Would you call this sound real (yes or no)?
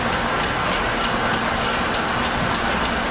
yes